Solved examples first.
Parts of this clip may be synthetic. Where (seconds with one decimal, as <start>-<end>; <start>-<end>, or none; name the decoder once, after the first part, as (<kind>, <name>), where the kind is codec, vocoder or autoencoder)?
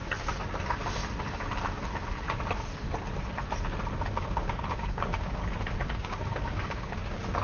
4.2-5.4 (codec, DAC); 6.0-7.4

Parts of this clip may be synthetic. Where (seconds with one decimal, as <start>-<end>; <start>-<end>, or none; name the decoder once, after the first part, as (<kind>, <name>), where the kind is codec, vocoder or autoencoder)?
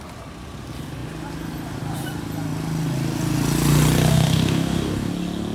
4.1-5.1 (codec, DAC)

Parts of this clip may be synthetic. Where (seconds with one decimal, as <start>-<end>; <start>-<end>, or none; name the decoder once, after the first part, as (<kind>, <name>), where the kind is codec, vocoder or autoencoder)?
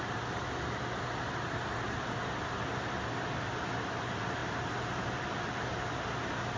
none